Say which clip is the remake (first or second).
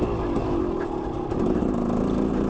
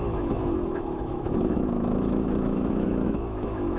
second